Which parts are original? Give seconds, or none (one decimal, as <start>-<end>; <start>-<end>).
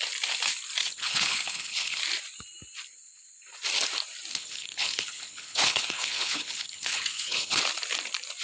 0.0-0.8; 2.0-4.3; 7.6-8.4